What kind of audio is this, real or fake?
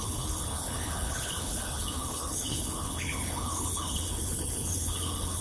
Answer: fake